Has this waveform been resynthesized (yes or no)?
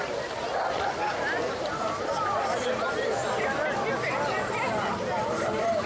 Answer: no